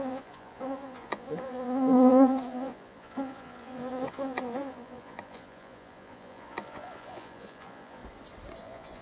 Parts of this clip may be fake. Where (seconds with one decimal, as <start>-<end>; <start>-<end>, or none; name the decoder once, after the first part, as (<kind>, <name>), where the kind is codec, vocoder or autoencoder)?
0.0-8.0 (vocoder, Vocos); 8.6-9.0